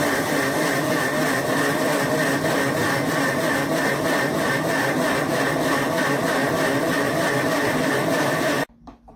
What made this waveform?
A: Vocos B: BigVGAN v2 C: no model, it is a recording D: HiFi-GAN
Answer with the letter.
B